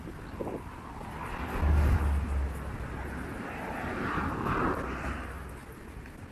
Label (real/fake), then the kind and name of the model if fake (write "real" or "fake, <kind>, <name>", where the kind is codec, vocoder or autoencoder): real